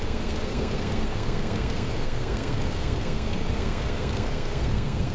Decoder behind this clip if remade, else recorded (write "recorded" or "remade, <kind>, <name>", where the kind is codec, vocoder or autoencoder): remade, codec, SNAC